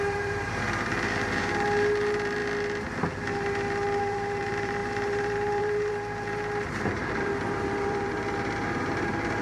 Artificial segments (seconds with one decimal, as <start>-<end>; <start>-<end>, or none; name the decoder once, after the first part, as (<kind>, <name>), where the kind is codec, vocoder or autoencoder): 0.0-2.4 (vocoder, BigVGAN v2); 4.0-9.4